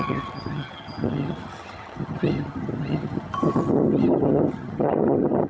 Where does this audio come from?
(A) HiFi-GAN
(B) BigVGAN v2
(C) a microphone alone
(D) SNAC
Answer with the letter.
A